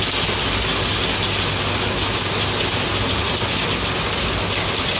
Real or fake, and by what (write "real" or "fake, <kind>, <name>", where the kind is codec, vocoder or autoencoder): real